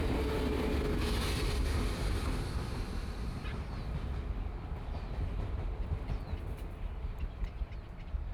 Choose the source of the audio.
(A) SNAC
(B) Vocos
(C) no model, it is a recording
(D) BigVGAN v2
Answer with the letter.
C